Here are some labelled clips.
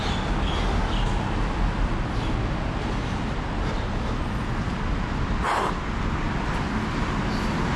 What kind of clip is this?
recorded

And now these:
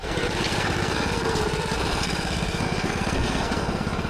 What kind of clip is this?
remade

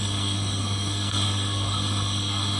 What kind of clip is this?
remade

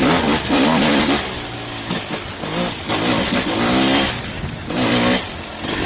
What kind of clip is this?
recorded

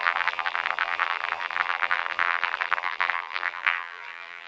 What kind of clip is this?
remade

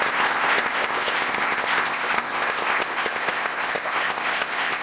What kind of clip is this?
remade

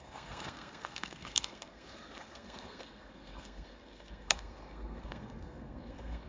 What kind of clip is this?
remade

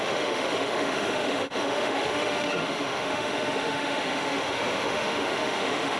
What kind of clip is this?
remade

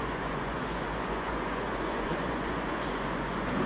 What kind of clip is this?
remade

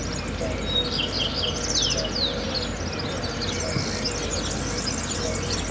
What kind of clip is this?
recorded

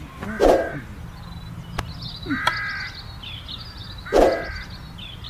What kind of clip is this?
recorded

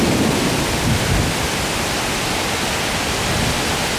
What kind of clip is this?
recorded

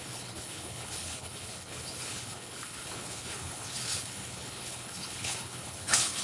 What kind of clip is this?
remade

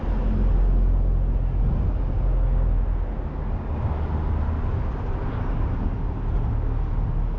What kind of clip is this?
recorded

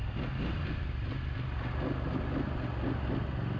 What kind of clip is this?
recorded